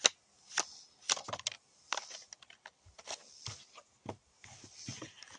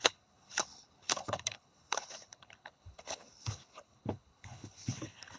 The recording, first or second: first